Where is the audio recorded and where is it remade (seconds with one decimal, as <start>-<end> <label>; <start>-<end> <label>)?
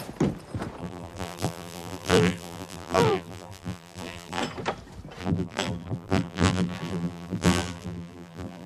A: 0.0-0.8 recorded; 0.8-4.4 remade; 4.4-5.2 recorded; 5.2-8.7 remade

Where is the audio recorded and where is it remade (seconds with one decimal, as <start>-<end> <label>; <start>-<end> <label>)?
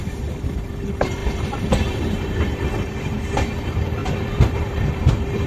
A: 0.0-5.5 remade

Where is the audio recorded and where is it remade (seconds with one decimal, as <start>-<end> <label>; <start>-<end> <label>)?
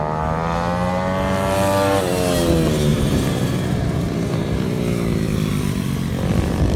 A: 0.0-2.9 recorded; 2.9-4.8 remade; 4.8-6.8 recorded